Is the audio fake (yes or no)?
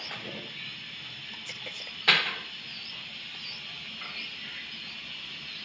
no